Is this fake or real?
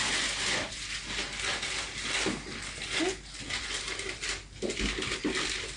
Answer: real